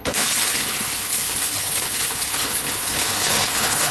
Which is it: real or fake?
fake